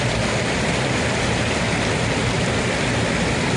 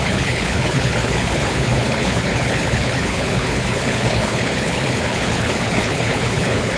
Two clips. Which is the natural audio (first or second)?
first